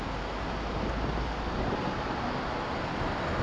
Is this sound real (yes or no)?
yes